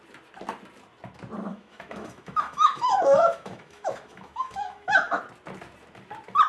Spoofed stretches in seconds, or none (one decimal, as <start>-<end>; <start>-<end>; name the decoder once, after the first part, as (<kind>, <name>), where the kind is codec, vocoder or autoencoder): 1.5-5.2 (autoencoder, DAC-VAE)